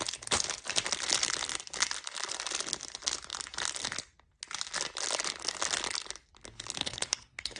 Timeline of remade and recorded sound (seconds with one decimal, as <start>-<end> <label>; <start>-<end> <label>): 0.0-6.8 recorded; 6.8-7.6 remade